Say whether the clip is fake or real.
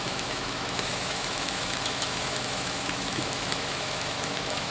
fake